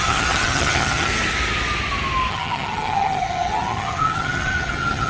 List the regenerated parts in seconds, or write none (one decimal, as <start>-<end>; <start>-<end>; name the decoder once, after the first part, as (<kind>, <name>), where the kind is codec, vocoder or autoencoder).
0.0-1.1 (vocoder, HiFi-GAN); 2.3-5.1